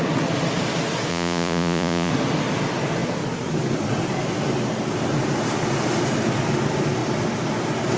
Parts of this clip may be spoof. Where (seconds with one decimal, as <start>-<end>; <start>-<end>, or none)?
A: 1.1-2.1